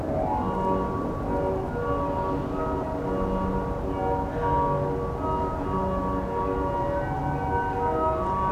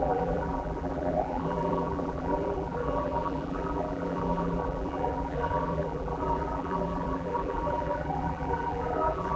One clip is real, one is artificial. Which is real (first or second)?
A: first